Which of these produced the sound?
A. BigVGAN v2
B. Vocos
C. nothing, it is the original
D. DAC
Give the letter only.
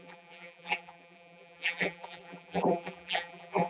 A